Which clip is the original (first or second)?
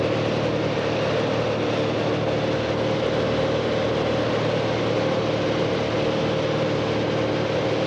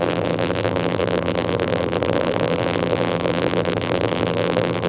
first